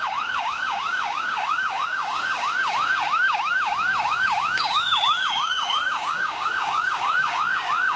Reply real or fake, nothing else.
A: fake